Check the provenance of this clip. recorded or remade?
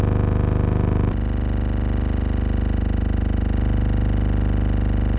recorded